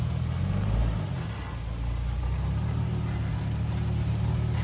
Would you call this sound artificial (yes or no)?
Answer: no